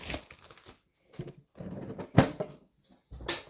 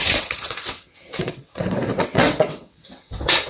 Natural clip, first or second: first